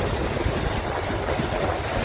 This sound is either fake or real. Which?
real